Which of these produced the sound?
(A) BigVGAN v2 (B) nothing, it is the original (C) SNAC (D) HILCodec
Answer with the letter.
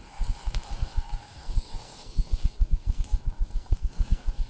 C